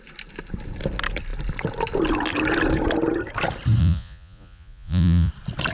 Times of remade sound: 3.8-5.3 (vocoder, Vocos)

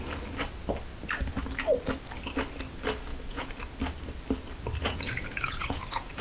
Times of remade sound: 3.1-3.6 (vocoder, Vocos); 4.8-6.2

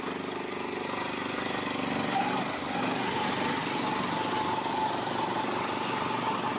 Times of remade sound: none

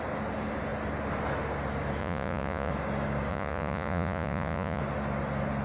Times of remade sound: 2.0-2.7 (vocoder, Vocos); 3.3-4.8